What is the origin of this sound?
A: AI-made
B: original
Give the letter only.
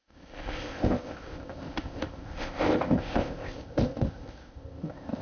A